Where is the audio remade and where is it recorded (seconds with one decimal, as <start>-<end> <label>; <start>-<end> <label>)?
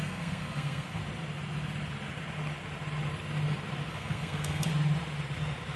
0.0-1.0 remade; 1.0-3.9 recorded; 3.9-4.7 remade; 4.7-5.8 recorded